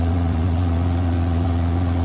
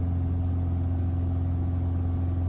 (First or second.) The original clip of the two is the second